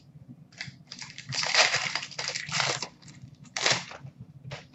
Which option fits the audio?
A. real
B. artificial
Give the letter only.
B